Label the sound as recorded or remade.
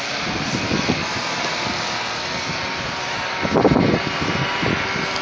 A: recorded